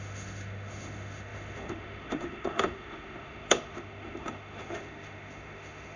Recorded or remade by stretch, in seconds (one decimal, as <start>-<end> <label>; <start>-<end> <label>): 0.0-6.0 remade